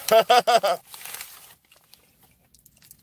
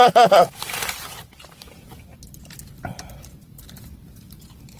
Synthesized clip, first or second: second